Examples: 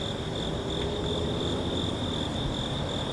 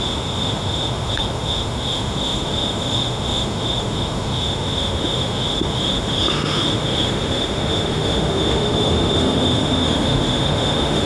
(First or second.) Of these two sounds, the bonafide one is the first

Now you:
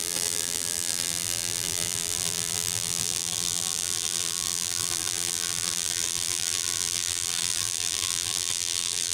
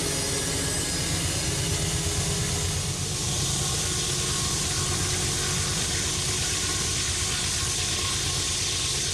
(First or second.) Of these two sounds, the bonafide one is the second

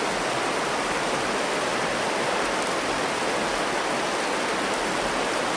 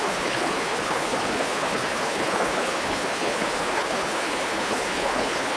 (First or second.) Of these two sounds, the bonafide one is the first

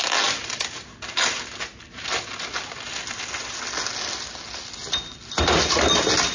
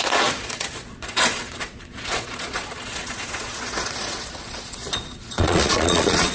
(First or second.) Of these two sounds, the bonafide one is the first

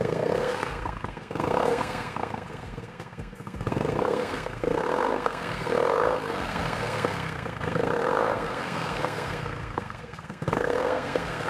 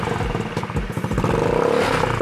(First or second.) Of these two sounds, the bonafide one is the second